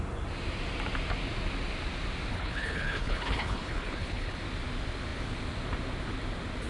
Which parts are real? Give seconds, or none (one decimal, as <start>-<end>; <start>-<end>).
0.0-2.3; 4.4-6.7